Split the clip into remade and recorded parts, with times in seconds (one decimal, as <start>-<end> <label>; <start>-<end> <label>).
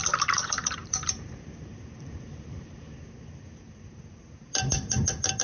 0.0-5.4 remade